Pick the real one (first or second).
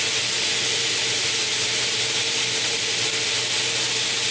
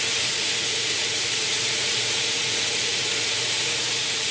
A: first